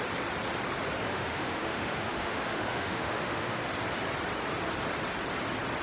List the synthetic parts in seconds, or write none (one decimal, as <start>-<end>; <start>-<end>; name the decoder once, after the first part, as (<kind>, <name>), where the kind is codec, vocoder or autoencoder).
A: 1.1-3.6 (autoencoder, DAC-VAE)